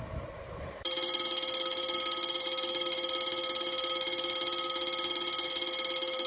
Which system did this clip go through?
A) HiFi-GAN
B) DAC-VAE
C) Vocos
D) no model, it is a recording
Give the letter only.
D